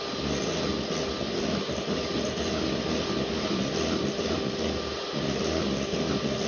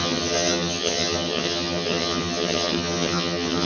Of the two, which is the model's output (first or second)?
second